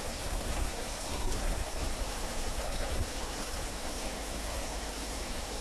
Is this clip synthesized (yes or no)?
yes